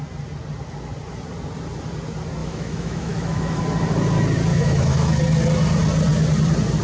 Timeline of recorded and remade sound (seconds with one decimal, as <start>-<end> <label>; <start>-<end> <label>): 0.0-2.4 recorded; 2.4-3.6 remade; 3.6-4.5 recorded; 4.5-5.2 remade; 5.2-6.8 recorded